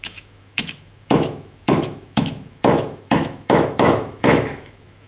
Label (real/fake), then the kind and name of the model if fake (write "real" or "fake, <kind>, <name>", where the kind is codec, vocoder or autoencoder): fake, autoencoder, DAC-VAE